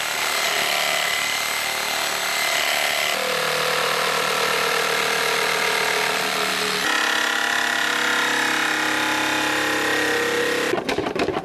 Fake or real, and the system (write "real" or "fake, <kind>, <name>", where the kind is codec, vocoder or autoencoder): real